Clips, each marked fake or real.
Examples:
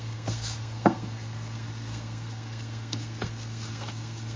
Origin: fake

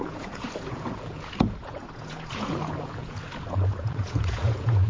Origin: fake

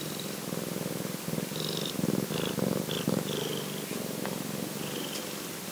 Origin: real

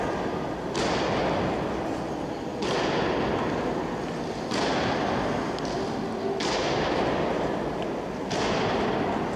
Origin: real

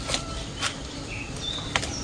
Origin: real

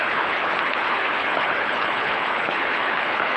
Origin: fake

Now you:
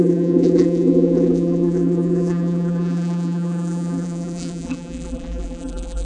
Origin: fake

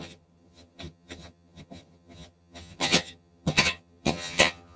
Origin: fake